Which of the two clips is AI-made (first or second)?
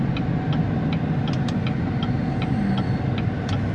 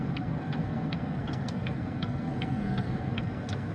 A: second